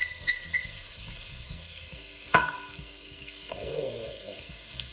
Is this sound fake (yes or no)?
yes